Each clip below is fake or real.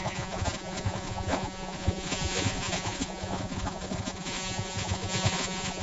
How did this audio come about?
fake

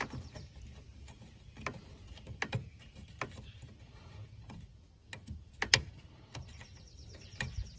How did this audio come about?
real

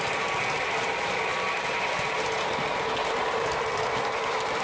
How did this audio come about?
real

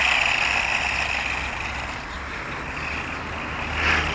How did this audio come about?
real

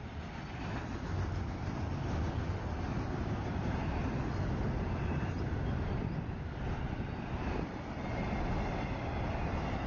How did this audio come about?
real